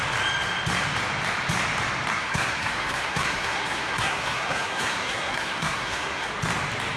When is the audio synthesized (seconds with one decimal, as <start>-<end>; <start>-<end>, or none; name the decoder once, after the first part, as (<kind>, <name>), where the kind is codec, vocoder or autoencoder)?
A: 2.1-6.3 (codec, SNAC)